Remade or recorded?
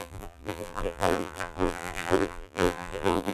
remade